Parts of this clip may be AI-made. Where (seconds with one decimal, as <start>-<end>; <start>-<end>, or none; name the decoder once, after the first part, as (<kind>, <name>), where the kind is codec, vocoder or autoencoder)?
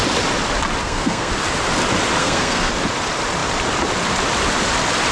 0.8-1.3 (codec, SNAC); 2.2-2.7